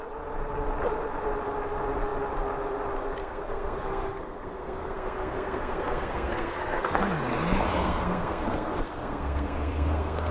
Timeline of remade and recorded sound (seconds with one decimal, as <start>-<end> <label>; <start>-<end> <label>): 0.0-3.2 recorded; 3.2-7.0 remade; 7.0-7.7 recorded; 7.7-10.3 remade